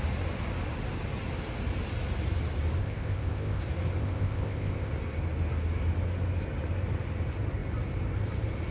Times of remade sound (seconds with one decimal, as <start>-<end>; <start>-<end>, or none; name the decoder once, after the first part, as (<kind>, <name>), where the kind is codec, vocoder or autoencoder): 2.8-3.6 (codec, ZipCodec); 4.0-4.9